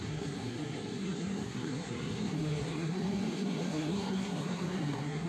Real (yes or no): no